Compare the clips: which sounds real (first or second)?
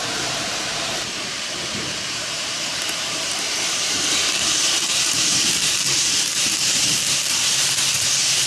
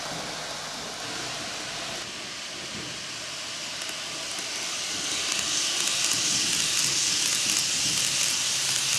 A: second